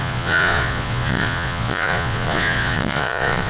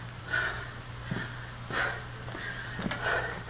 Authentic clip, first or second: second